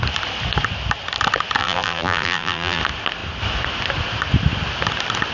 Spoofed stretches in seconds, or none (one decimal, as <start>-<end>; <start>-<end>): 1.6-2.8

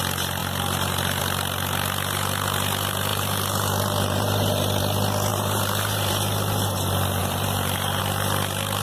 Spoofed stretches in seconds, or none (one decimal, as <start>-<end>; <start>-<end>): 3.1-4.8; 5.3-6.1; 7.2-8.0